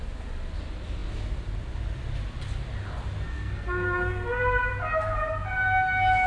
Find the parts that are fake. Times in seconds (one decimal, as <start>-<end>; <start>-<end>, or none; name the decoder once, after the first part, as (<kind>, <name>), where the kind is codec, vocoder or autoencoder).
3.3-4.4 (codec, SNAC)